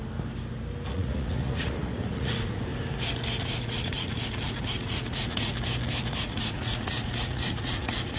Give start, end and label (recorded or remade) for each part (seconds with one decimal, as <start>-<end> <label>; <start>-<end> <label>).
0.0-0.9 recorded; 0.9-2.7 remade; 2.7-3.4 recorded; 3.4-5.5 remade; 5.5-6.2 recorded; 6.2-8.2 remade